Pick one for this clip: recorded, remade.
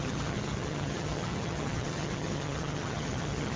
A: remade